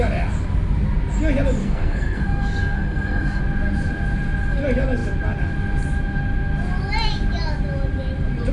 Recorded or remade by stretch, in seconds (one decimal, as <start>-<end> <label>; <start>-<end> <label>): 0.0-1.6 recorded; 1.6-3.4 remade; 3.4-8.5 recorded